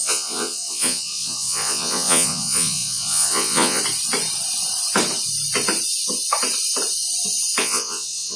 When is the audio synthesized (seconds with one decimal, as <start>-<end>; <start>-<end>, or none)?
0.0-3.8; 7.6-8.4